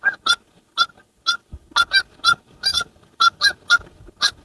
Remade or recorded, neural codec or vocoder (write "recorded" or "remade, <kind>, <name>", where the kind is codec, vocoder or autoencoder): recorded